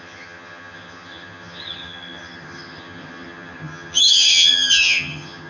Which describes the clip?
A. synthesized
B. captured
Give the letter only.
A